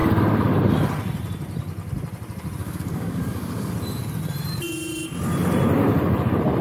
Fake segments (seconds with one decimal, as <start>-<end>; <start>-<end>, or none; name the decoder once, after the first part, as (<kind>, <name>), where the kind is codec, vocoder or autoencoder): 2.6-3.7 (codec, DAC)